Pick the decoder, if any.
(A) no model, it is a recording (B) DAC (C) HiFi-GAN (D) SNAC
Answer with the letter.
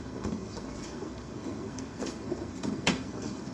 D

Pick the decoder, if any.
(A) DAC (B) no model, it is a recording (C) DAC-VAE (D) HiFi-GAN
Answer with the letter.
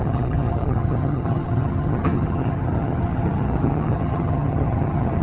D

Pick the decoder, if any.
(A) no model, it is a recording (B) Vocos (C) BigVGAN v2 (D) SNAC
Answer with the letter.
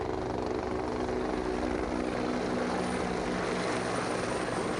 A